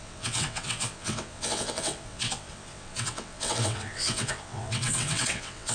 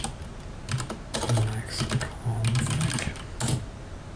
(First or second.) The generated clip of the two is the first